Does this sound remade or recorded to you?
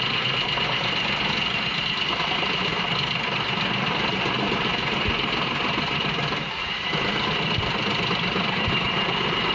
recorded